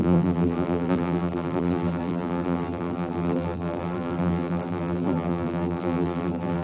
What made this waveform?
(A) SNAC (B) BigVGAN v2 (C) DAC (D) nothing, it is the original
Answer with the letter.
B